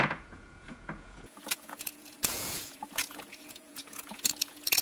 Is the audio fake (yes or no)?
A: yes